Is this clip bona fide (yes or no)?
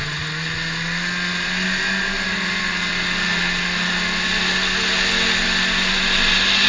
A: yes